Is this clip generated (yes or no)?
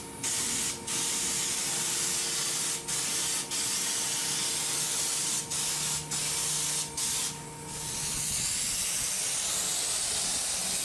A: no